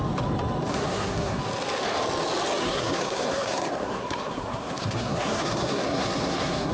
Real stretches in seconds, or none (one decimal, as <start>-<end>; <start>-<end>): 0.0-0.7; 1.4-2.6